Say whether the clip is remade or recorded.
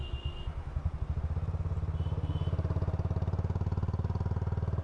recorded